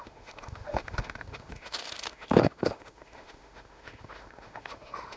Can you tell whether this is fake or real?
fake